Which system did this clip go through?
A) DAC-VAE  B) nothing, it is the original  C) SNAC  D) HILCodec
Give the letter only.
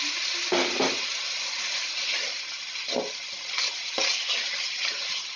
B